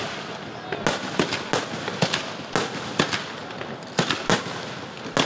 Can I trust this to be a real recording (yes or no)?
yes